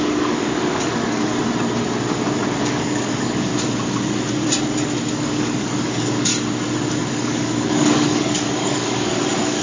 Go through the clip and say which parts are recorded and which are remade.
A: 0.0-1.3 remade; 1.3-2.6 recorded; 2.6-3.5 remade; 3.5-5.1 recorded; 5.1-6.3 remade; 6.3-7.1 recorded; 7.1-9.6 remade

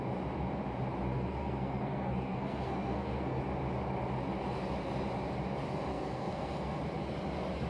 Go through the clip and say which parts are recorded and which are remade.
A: 0.0-1.1 recorded; 1.1-3.4 remade; 3.4-5.9 recorded; 5.9-6.8 remade; 6.8-7.7 recorded